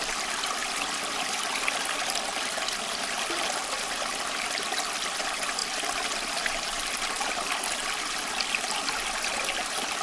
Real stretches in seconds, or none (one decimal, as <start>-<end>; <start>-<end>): 0.0-10.0